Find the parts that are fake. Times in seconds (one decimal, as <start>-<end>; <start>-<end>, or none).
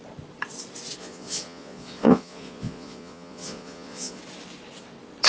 1.0-4.2